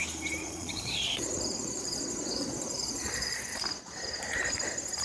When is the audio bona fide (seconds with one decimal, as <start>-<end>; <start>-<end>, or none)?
0.0-0.4; 3.4-5.0